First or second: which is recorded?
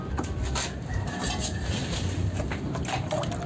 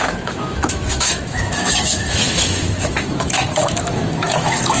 first